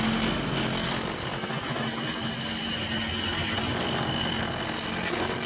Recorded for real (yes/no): yes